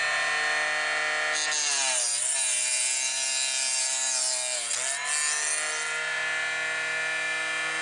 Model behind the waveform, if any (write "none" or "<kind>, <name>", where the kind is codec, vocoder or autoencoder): none